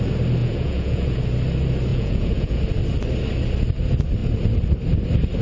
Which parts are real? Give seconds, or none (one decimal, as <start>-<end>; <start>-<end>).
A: 0.0-0.4; 1.2-1.9; 2.6-5.4